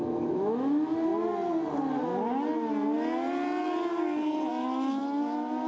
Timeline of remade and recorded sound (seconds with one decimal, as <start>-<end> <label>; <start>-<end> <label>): 0.0-1.1 remade; 1.1-4.5 recorded; 4.5-5.0 remade; 5.0-5.7 recorded